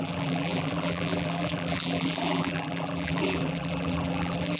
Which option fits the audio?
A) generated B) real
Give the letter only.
A